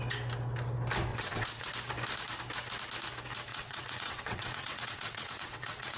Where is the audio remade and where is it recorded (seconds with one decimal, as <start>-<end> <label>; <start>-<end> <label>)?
0.0-1.1 recorded; 1.1-1.7 remade; 1.7-3.5 recorded; 3.5-6.0 remade